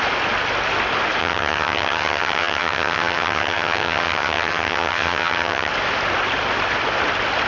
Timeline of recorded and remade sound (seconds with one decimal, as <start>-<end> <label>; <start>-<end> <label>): 0.0-1.2 recorded; 1.2-5.7 remade; 5.7-7.5 recorded